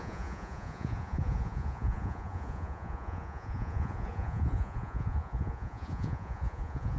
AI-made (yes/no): yes